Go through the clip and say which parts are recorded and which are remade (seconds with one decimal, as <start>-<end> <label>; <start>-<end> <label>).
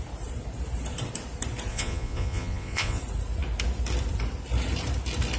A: 0.0-1.7 recorded; 1.7-3.0 remade; 3.0-5.4 recorded